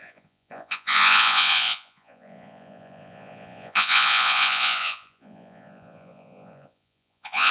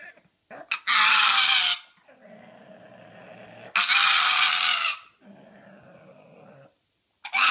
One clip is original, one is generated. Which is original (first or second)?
second